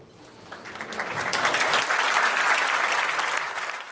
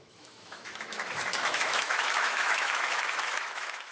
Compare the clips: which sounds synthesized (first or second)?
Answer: second